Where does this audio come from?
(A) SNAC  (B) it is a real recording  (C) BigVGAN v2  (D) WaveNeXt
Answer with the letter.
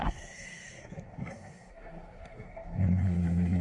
A